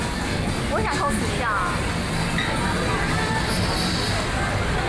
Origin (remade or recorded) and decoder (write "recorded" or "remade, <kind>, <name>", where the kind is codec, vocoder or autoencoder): recorded